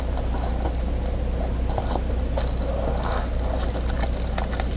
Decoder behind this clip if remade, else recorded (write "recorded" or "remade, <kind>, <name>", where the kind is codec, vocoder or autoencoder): recorded